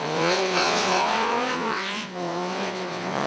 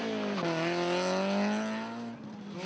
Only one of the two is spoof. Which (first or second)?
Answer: first